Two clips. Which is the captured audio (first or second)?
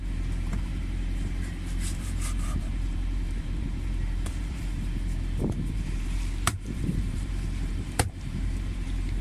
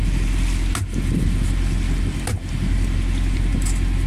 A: second